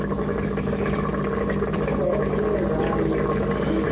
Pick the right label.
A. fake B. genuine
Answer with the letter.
B